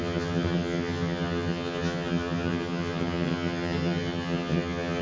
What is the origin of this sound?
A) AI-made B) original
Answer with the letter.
A